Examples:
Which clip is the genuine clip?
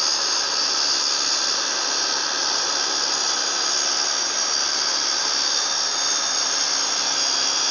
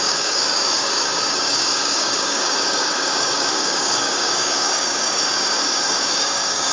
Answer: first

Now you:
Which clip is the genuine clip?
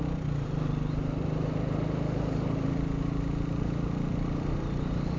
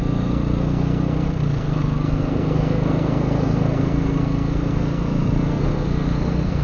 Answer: first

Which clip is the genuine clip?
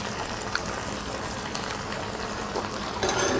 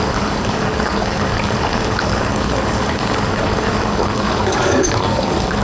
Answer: first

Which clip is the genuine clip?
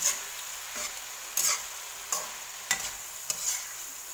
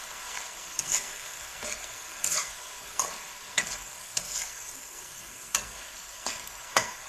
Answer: first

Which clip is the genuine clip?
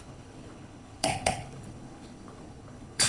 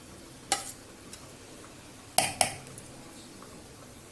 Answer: second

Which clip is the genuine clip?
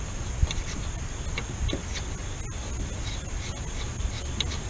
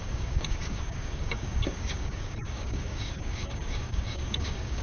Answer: first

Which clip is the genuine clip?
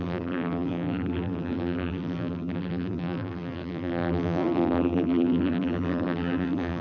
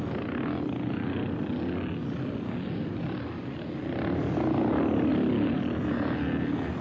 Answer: second